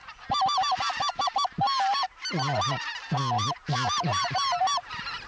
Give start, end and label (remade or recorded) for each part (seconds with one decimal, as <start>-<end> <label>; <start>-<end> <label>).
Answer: 0.0-5.3 recorded

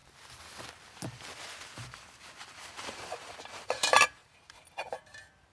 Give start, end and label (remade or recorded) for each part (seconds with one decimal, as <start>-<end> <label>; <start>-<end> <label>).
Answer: 0.0-2.7 recorded; 2.7-5.5 remade

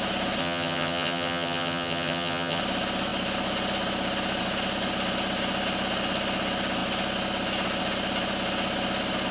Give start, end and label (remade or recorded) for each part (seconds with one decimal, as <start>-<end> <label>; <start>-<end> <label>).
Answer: 0.0-0.4 recorded; 0.4-2.6 remade; 2.6-9.3 recorded

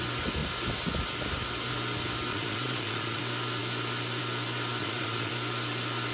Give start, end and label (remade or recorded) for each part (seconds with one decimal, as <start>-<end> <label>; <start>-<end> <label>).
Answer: 0.0-2.3 recorded; 2.3-3.2 remade; 3.2-4.8 recorded; 4.8-5.3 remade; 5.3-6.1 recorded

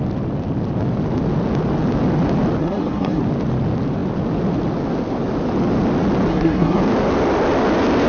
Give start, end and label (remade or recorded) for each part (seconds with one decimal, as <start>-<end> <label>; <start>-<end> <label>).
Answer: 0.0-2.6 recorded; 2.6-3.2 remade; 3.2-6.3 recorded; 6.3-6.8 remade; 6.8-8.1 recorded

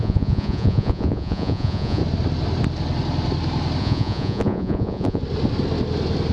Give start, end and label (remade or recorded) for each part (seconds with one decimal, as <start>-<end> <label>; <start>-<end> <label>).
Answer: 0.0-2.0 remade; 2.0-3.8 recorded; 3.8-5.2 remade; 5.2-6.3 recorded